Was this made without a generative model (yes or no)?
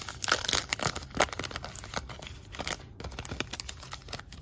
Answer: yes